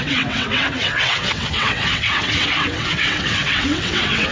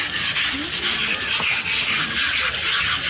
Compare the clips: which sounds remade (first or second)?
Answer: first